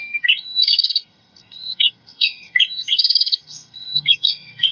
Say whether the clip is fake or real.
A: fake